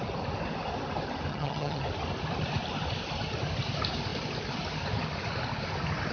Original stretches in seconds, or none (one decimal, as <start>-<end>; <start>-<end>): 0.0-1.3; 1.8-6.1